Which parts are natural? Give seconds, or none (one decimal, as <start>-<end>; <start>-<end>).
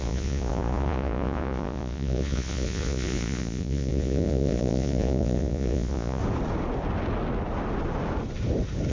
6.2-8.9